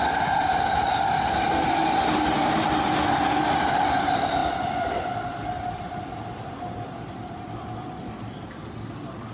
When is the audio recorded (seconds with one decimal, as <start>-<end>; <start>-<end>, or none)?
0.0-9.3